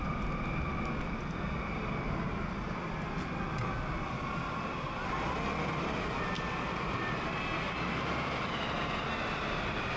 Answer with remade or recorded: recorded